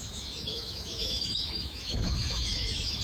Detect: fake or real fake